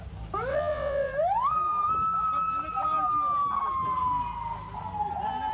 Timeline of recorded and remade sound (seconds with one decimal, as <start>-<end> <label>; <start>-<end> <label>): 0.0-0.5 recorded; 0.5-1.1 remade; 1.1-5.5 recorded